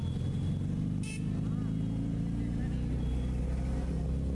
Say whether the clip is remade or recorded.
recorded